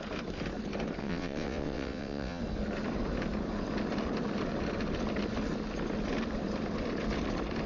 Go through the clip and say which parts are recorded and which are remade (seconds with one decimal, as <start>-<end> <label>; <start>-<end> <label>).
0.0-1.0 recorded; 1.0-2.4 remade; 2.4-7.7 recorded